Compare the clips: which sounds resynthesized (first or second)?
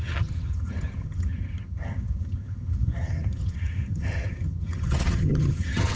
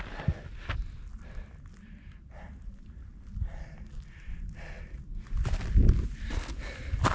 first